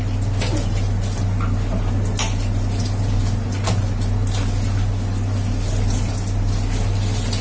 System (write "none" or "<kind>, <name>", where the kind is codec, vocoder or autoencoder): none